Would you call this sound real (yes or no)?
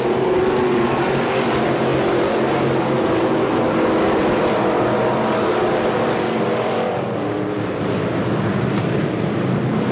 yes